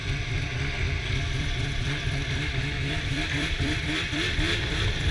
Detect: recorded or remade remade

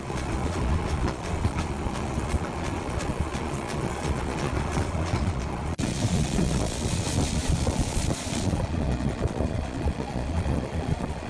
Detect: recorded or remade remade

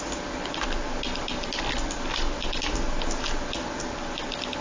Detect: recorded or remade recorded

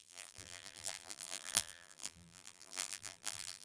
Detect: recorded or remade remade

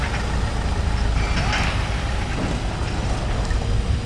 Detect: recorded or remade recorded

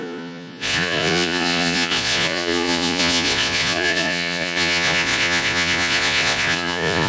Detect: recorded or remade remade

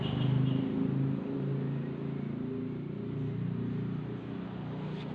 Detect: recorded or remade recorded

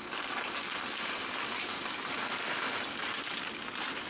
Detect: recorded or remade recorded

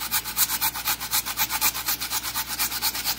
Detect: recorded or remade recorded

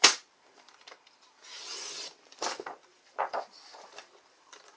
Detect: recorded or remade remade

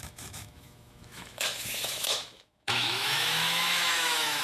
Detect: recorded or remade remade